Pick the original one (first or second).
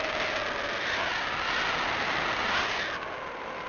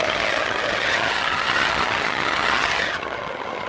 first